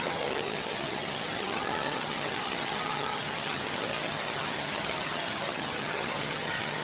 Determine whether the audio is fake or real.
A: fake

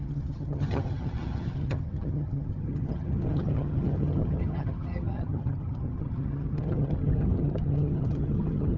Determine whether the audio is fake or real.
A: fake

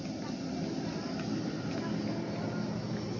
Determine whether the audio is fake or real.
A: real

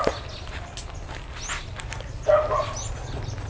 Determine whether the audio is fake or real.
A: real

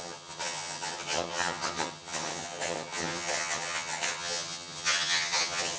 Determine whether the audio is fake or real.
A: fake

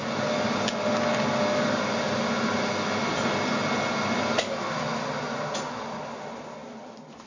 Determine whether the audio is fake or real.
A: real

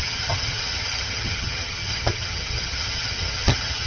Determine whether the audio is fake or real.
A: fake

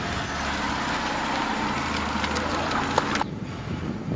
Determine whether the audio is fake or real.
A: real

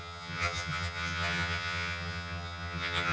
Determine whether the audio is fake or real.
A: fake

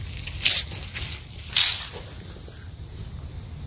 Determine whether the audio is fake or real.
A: real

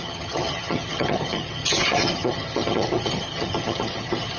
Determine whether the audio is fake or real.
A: fake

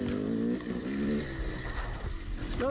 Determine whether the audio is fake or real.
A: real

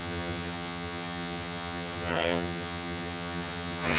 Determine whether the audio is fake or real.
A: fake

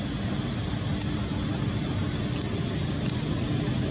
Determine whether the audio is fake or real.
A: real